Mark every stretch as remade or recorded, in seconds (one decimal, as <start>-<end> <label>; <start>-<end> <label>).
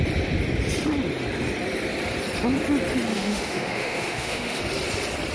0.0-3.1 recorded; 3.1-4.6 remade; 4.6-5.3 recorded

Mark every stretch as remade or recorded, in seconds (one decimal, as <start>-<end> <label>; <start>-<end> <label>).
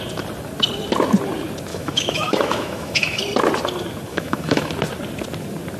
0.0-1.7 recorded; 1.7-3.2 remade; 3.2-4.1 recorded; 4.1-4.7 remade; 4.7-5.8 recorded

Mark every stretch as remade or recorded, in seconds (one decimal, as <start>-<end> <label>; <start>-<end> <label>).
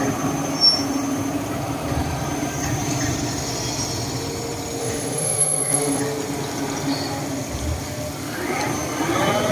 0.0-4.8 recorded; 4.8-6.0 remade; 6.0-9.5 recorded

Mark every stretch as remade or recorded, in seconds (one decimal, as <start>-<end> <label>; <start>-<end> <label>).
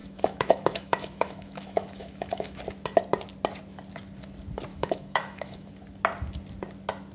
0.0-2.6 remade; 2.6-4.7 recorded; 4.7-5.7 remade; 5.7-7.1 recorded